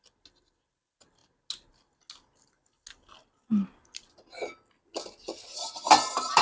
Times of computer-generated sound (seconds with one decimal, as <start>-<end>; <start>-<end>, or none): none

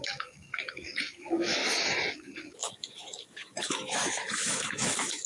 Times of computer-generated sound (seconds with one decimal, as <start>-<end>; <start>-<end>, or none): 0.0-1.6; 2.1-5.3